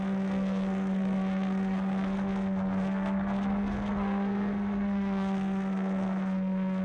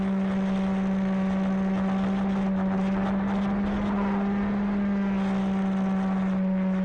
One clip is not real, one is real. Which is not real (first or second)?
first